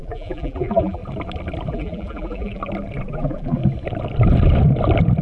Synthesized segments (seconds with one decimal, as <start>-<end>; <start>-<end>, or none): 0.0-1.0; 1.7-2.6; 3.1-3.6